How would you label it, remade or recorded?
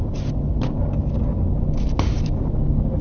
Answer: recorded